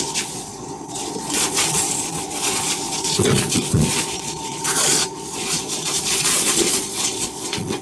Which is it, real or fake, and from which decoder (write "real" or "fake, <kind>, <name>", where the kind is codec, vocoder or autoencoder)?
fake, vocoder, Vocos